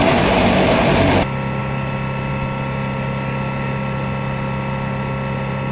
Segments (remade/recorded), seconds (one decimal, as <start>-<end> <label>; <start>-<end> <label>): 0.0-5.7 recorded